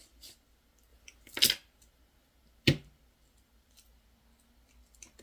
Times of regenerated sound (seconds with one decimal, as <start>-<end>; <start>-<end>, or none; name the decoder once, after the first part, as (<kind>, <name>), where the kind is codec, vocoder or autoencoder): none